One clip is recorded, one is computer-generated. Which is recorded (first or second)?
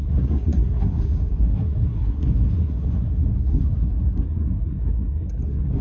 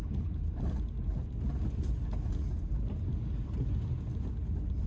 second